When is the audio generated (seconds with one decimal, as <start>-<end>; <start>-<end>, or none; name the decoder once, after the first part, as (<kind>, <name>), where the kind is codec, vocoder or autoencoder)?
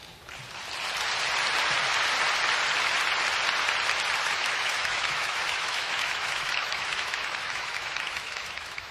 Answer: 4.2-8.9 (autoencoder, DAC-VAE)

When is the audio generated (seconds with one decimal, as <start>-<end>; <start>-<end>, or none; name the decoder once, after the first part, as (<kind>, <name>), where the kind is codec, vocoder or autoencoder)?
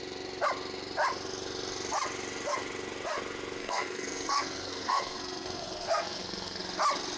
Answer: 3.6-6.6 (codec, SNAC)